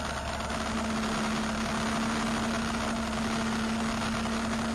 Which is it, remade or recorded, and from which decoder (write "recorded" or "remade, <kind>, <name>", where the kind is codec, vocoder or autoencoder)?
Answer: recorded